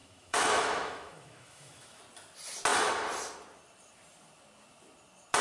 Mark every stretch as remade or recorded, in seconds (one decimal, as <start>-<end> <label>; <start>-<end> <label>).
0.0-2.0 remade; 2.0-5.4 recorded